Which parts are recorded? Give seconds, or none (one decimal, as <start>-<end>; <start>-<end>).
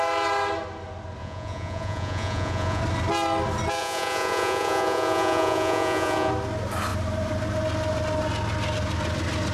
0.0-1.2; 2.8-3.8; 6.3-9.5